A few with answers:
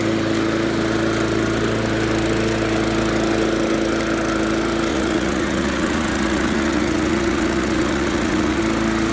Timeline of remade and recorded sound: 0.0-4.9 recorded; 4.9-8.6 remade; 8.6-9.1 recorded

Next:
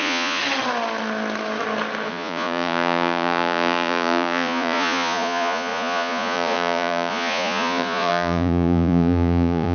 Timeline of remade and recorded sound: 0.0-0.4 remade; 0.4-2.1 recorded; 2.1-9.7 remade

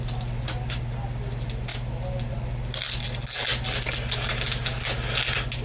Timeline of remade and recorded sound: 0.0-5.6 recorded

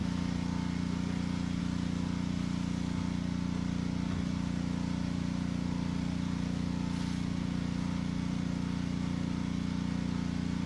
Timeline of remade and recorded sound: 0.0-10.7 recorded

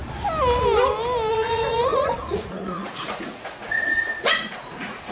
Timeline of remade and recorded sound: 0.0-1.3 recorded; 1.3-5.1 remade

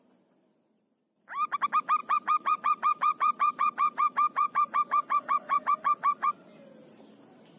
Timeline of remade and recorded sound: 0.0-2.0 recorded; 2.0-6.3 remade; 6.3-7.6 recorded

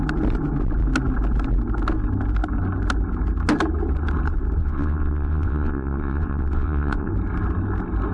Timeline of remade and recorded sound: 0.0-4.6 recorded; 4.6-7.1 remade; 7.1-8.1 recorded

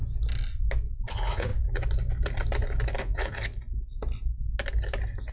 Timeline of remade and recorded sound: 0.0-1.1 recorded; 1.1-1.5 remade; 1.5-3.0 recorded; 3.0-3.5 remade; 3.5-5.3 recorded